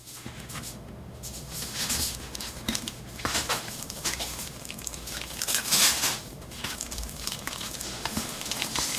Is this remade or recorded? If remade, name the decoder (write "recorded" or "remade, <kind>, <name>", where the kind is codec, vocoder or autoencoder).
remade, autoencoder, DAC-VAE